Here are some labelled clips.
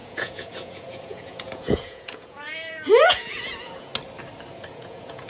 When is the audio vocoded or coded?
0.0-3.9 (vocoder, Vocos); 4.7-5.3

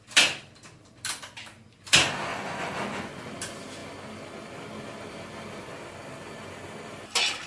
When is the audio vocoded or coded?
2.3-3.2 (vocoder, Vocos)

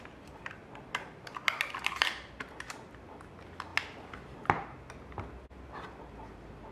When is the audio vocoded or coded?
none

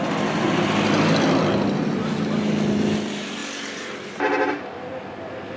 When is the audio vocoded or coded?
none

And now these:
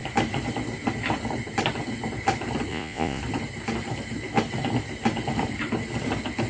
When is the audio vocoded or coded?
2.7-3.2 (vocoder, Vocos)

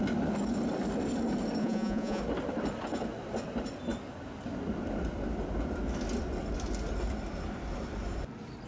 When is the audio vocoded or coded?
1.6-2.2 (vocoder, Vocos)

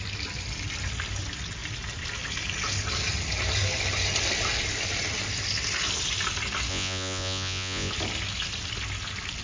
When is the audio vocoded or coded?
6.7-7.9 (vocoder, Vocos)